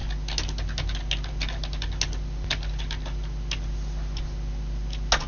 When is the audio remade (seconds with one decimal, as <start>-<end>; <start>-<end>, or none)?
none